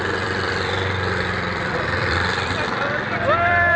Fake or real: fake